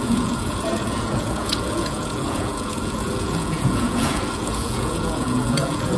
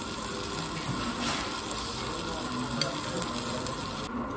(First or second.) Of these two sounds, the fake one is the first